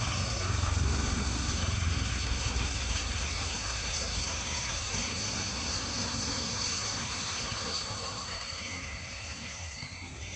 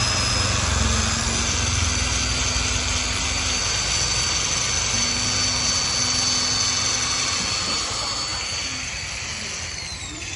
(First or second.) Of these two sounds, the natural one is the second